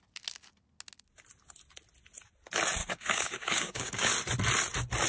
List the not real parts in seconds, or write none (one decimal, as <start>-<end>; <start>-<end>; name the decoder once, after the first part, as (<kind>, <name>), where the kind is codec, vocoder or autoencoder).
2.8-4.1 (codec, DAC)